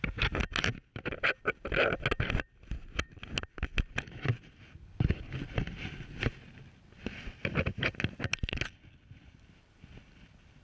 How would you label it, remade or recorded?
recorded